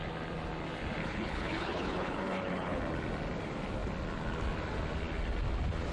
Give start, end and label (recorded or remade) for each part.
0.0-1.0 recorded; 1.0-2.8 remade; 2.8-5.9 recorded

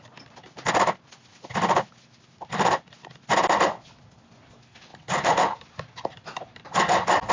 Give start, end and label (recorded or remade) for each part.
0.0-7.3 recorded

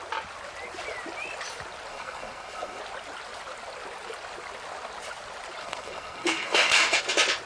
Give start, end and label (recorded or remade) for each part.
0.0-1.9 recorded; 1.9-2.8 remade; 2.8-5.6 recorded; 5.6-7.0 remade; 7.0-7.5 recorded

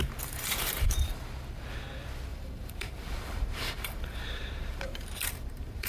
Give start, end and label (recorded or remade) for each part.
0.0-1.1 remade; 1.1-2.3 recorded; 2.3-5.9 remade

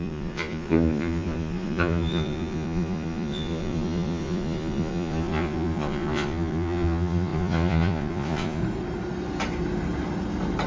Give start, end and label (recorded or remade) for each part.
0.0-8.6 remade; 8.6-10.7 recorded

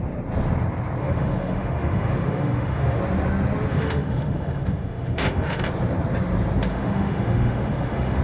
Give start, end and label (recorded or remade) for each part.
0.0-1.0 recorded; 1.0-3.0 remade; 3.0-3.7 recorded; 3.7-5.6 remade; 5.6-6.7 recorded; 6.7-8.2 remade

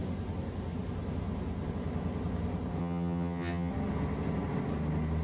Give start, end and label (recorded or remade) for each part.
0.0-2.8 recorded; 2.8-3.7 remade; 3.7-5.2 recorded